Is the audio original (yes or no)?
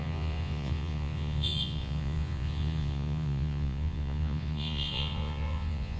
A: no